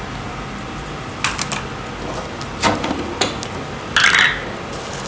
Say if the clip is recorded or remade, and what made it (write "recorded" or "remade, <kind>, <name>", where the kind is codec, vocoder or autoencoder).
recorded